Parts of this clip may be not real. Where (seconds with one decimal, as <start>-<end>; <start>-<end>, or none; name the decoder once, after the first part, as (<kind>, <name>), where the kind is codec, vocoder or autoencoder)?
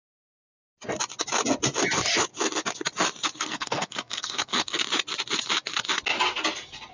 3.4-4.8 (codec, SNAC)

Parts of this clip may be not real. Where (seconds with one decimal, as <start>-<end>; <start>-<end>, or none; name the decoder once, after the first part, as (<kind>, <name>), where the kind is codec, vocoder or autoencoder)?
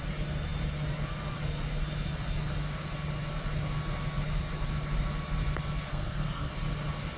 5.9-6.5 (codec, SNAC)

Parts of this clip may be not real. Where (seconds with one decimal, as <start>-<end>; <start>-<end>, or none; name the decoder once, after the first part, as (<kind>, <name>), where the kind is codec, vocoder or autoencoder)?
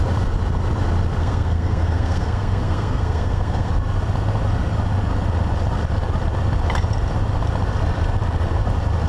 1.2-3.7 (codec, SNAC)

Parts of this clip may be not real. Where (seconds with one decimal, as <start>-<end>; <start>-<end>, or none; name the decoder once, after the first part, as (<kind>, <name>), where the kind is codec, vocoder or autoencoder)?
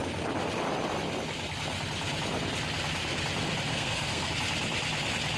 3.7-4.3 (codec, SNAC)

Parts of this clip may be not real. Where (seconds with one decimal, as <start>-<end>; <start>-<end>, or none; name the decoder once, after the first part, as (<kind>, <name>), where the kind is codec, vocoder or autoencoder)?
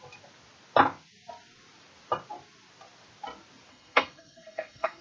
3.7-5.0 (codec, SNAC)